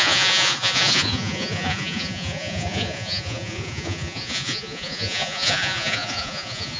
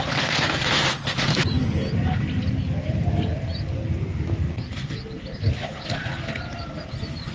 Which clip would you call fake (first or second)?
first